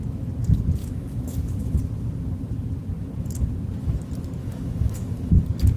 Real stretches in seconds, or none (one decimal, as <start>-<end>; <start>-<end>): 0.0-0.8; 1.8-4.4; 5.3-5.8